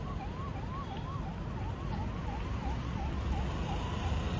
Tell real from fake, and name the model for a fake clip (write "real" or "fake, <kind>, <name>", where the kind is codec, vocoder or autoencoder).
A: real